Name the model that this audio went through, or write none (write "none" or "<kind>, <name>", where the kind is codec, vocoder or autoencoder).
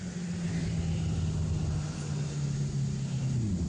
none